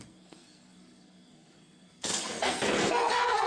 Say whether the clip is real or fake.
fake